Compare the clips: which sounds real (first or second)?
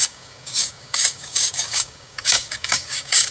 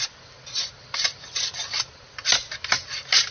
second